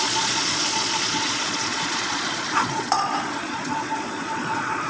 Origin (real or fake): fake